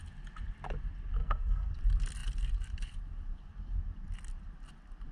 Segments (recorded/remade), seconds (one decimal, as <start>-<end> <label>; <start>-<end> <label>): 0.0-1.2 recorded; 1.2-1.7 remade; 1.7-5.1 recorded